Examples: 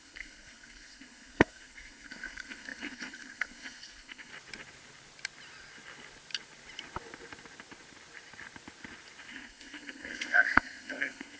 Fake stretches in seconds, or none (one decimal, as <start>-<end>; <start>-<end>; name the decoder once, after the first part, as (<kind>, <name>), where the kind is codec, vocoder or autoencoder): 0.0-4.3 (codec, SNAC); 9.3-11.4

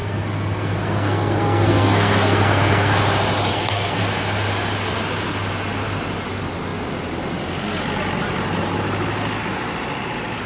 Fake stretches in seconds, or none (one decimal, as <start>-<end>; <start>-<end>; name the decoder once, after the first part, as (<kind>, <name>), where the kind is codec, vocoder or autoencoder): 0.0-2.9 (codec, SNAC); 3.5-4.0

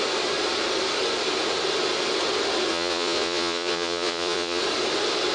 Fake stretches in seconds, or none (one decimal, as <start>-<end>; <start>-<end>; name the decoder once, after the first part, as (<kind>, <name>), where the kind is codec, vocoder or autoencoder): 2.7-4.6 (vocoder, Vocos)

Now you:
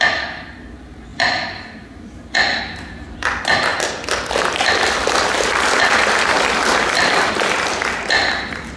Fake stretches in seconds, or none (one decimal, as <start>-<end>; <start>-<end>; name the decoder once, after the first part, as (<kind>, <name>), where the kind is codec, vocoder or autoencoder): 1.1-2.6 (vocoder, BigVGAN v2); 3.7-7.8

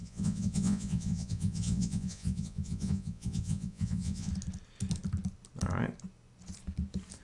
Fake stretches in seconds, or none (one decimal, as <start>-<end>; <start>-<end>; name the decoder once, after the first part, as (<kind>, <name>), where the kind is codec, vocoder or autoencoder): 0.0-4.3 (vocoder, Vocos)

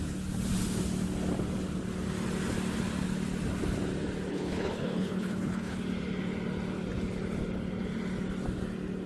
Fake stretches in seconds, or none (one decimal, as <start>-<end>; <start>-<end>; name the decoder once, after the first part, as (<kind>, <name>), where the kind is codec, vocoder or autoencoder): 4.3-5.8 (codec, HILCodec)